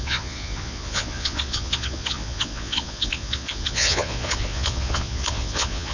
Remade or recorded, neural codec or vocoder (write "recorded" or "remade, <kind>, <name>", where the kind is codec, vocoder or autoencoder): remade, vocoder, Vocos